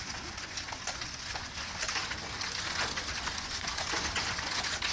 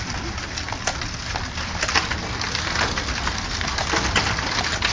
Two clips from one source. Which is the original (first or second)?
second